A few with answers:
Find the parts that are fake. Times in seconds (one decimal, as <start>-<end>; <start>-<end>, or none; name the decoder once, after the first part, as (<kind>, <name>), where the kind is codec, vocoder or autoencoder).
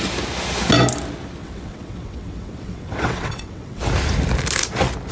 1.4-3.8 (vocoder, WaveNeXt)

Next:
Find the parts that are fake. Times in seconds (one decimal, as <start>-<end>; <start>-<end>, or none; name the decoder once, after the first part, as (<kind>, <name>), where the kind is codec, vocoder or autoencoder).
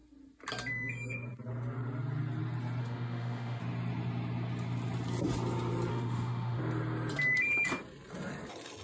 2.8-3.6 (autoencoder, DAC-VAE); 5.9-6.6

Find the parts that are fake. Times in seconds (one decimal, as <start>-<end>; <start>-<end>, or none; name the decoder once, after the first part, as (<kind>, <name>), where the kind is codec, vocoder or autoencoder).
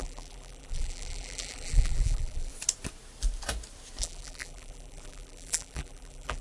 0.0-2.5 (vocoder, BigVGAN v2); 4.0-6.4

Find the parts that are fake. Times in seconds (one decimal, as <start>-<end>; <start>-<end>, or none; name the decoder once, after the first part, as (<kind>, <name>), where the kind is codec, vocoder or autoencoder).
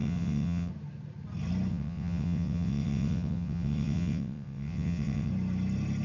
0.0-0.7 (vocoder, WaveNeXt); 1.7-5.3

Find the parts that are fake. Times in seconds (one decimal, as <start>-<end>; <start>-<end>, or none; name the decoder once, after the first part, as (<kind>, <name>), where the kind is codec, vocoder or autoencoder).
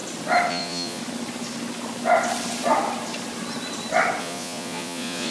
0.5-1.0 (vocoder, Vocos); 4.2-5.3